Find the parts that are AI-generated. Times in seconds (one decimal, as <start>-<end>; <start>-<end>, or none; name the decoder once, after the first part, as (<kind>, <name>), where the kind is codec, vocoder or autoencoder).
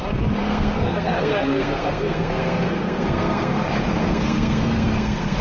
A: 0.4-3.6 (codec, SNAC); 4.0-5.4